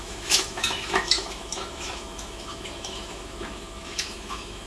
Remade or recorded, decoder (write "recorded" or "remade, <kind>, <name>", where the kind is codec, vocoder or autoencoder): remade, autoencoder, DAC-VAE